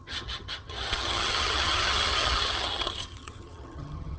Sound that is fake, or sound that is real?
fake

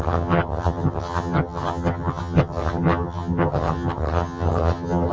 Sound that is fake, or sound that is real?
fake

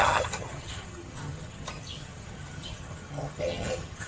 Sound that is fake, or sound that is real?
fake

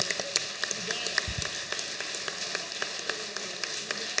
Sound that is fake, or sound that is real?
real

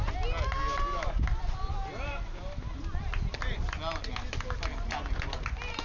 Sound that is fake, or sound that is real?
real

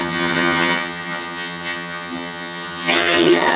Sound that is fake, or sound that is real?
fake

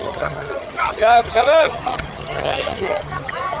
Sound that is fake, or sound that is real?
fake